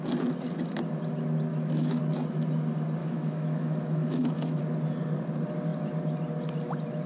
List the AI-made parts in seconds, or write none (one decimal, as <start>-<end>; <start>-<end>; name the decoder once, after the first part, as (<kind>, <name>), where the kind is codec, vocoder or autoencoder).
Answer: 1.5-2.0 (autoencoder, DAC-VAE); 3.0-4.6